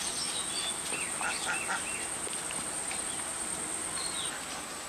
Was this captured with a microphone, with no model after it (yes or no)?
yes